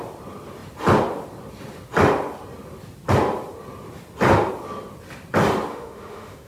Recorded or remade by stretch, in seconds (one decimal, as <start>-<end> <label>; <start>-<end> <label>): 0.0-5.7 recorded; 5.7-6.5 remade